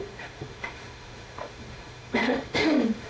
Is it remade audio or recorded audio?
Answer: remade